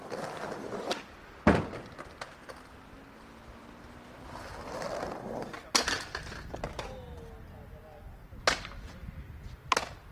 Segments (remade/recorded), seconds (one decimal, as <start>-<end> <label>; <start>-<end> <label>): 0.0-10.1 recorded